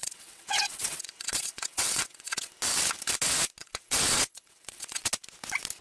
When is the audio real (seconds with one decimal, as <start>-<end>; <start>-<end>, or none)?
2.5-3.6; 5.1-5.8